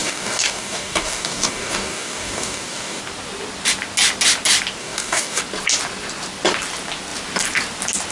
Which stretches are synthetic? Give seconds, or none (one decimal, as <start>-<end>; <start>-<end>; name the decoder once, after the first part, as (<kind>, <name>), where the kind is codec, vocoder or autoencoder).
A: 0.0-3.0 (codec, DAC); 4.8-5.4